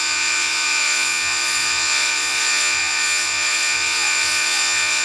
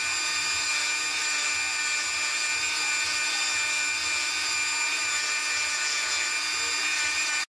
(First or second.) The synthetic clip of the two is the first